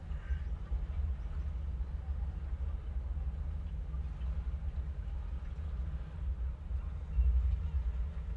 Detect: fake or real real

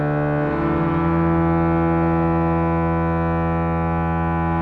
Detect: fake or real real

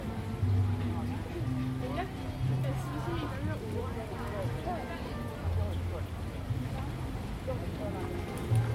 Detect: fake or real real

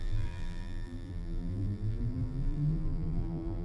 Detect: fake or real fake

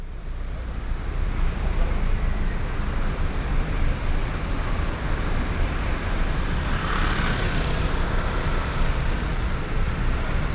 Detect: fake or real fake